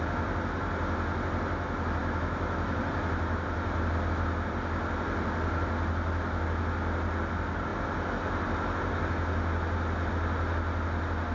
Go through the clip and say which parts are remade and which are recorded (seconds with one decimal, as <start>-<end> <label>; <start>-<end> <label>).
0.0-2.0 recorded; 2.0-2.8 remade; 2.8-11.3 recorded